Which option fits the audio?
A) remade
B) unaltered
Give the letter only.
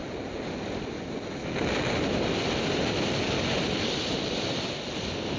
B